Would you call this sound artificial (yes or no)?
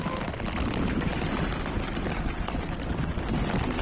no